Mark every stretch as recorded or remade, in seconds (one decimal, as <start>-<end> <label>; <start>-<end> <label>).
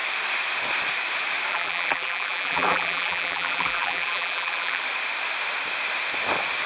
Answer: 0.0-1.5 recorded; 1.5-4.8 remade; 4.8-6.7 recorded